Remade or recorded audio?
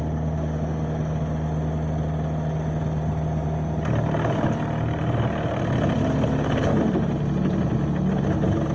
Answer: recorded